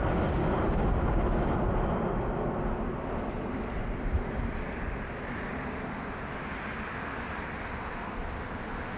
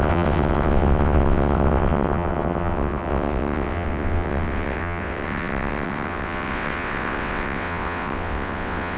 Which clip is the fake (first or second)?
second